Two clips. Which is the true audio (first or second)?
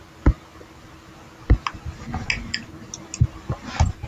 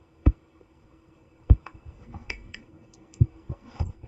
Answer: first